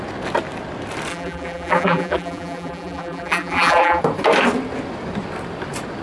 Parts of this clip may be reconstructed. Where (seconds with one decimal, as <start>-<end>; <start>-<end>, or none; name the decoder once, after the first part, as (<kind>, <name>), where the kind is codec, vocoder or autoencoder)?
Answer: 1.1-4.0 (vocoder, BigVGAN v2)